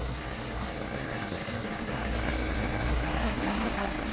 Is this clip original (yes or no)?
no